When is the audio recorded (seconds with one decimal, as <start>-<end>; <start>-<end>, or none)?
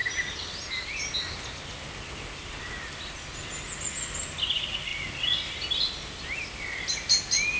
0.0-7.6